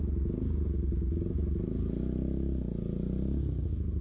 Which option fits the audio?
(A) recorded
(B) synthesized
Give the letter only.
A